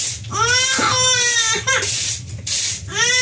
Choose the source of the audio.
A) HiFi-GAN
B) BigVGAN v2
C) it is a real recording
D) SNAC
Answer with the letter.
C